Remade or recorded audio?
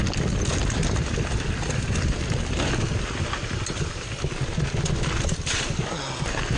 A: recorded